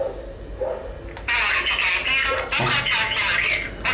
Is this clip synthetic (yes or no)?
no